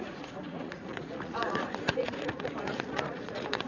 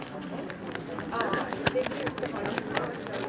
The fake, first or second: first